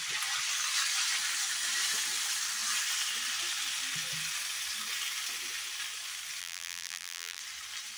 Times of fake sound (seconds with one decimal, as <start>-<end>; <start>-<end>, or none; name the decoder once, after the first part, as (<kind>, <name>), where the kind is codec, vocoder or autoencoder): 6.4-7.4 (vocoder, BigVGAN v2)